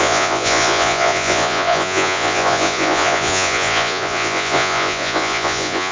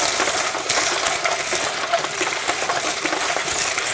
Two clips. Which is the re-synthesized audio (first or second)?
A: first